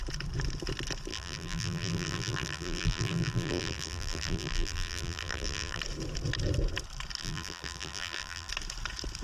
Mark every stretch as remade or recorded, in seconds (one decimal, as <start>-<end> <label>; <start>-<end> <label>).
0.0-1.1 recorded; 1.1-5.8 remade; 5.8-7.2 recorded; 7.2-8.5 remade; 8.5-9.2 recorded